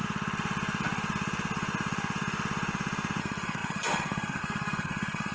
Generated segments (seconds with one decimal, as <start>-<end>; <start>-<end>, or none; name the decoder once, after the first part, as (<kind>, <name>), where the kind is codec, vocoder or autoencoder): 3.2-5.3 (codec, SNAC)